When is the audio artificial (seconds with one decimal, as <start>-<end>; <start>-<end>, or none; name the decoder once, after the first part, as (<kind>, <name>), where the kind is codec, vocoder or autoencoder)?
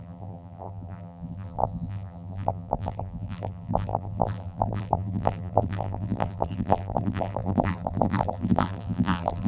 0.0-9.5 (vocoder, BigVGAN v2)